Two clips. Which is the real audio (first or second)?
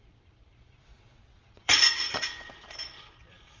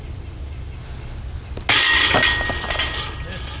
second